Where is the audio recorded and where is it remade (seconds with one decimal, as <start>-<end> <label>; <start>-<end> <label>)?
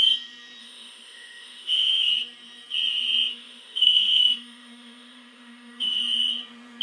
0.0-0.6 recorded; 0.6-2.1 remade; 2.1-3.3 recorded; 3.3-6.0 remade; 6.0-6.8 recorded